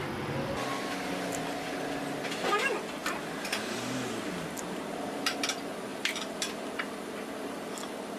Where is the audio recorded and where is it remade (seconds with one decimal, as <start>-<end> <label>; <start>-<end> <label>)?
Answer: 0.0-5.9 recorded; 5.9-6.8 remade; 6.8-8.2 recorded